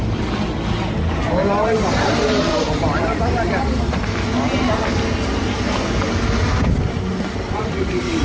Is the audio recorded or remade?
recorded